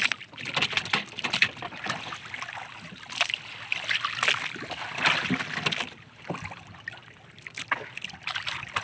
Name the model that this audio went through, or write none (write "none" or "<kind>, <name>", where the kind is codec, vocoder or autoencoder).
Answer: none